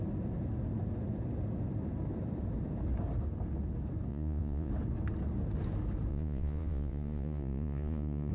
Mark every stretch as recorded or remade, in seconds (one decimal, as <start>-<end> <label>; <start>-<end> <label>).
0.0-4.1 recorded; 4.1-4.7 remade; 4.7-6.1 recorded; 6.1-8.3 remade